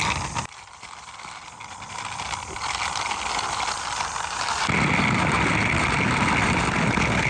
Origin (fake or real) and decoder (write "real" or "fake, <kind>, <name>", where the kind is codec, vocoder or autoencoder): real